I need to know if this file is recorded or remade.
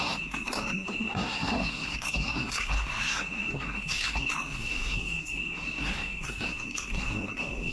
remade